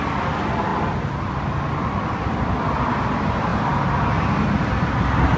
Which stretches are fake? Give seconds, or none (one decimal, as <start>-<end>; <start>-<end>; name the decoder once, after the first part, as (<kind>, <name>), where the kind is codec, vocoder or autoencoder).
none